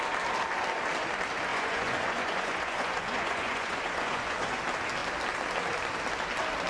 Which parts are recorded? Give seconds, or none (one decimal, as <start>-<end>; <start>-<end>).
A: 0.0-1.5; 4.6-6.7